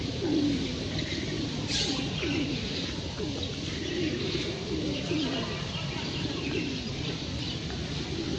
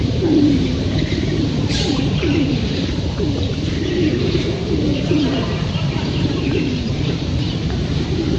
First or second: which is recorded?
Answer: first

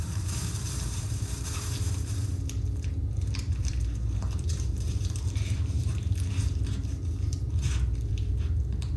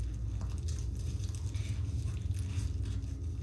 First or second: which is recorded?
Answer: second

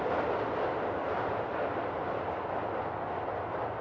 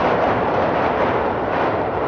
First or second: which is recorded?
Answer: first